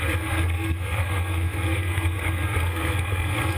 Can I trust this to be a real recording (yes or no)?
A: no